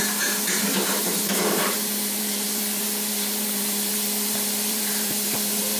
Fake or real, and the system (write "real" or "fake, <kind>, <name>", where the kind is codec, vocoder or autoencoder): fake, vocoder, BigVGAN v2